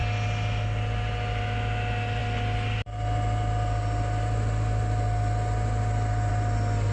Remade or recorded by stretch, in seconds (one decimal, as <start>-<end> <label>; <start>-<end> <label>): 0.0-6.9 recorded